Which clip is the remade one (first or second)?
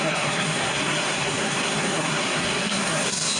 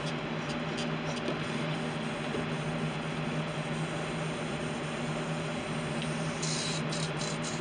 first